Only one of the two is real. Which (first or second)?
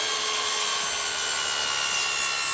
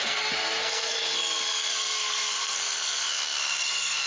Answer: first